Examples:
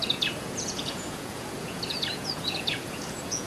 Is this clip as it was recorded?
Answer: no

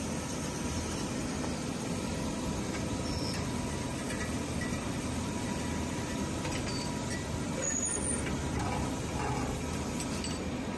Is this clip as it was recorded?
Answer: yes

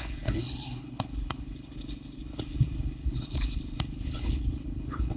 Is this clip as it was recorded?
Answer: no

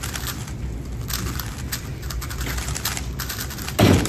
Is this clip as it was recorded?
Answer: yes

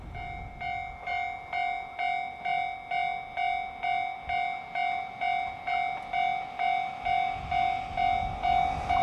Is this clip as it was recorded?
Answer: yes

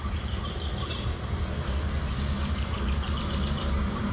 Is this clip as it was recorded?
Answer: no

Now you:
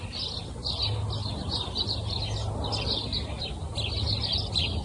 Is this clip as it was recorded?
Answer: yes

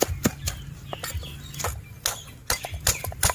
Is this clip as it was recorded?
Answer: yes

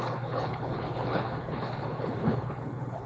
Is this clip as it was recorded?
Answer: no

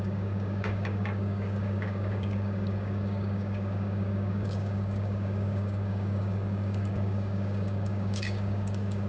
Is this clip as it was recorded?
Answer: no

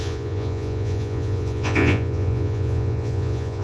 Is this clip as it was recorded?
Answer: no